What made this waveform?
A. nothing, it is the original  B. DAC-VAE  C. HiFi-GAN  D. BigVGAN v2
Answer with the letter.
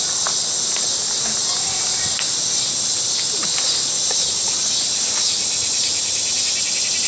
A